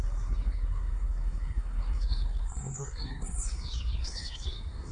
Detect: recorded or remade remade